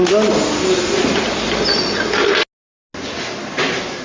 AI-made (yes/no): no